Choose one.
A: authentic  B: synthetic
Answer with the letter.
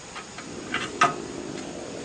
A